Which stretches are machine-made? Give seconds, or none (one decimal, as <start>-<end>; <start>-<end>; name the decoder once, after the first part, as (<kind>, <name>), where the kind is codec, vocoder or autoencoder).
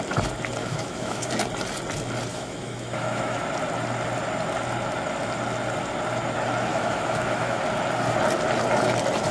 0.6-1.3 (autoencoder, DAC-VAE); 2.3-3.4; 6.7-7.6